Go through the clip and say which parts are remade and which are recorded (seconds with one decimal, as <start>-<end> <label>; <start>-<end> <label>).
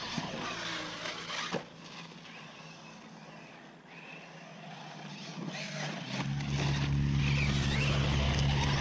0.0-8.8 recorded